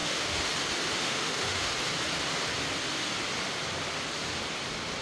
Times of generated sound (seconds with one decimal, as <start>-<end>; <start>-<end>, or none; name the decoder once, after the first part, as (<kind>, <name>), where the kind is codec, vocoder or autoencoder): 0.0-0.5 (autoencoder, DAC-VAE); 1.0-1.7